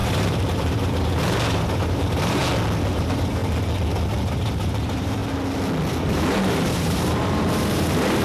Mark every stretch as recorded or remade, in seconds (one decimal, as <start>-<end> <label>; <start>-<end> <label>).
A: 0.0-2.4 remade; 2.4-2.9 recorded; 2.9-3.4 remade; 3.4-4.1 recorded; 4.1-5.2 remade; 5.2-6.0 recorded; 6.0-8.2 remade